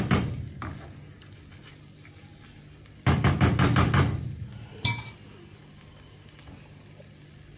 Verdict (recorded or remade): recorded